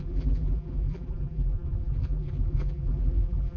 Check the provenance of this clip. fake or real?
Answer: fake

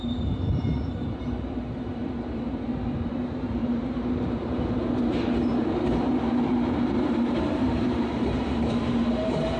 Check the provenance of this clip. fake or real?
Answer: fake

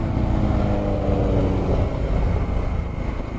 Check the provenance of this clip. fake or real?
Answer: real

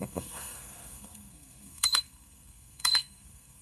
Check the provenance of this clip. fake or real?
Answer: fake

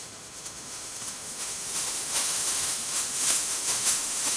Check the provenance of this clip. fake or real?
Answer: fake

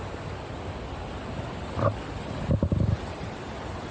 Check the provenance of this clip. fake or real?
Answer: real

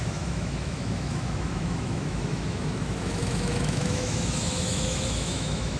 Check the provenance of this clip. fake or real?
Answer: fake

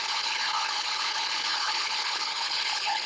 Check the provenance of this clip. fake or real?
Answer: fake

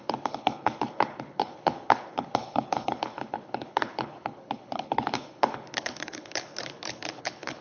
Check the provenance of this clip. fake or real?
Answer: fake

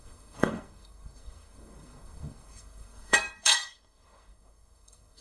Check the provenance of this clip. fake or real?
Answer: fake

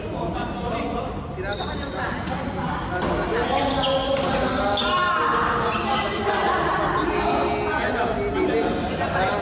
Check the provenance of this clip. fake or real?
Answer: real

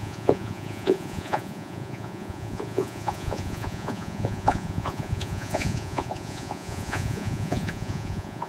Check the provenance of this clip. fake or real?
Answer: fake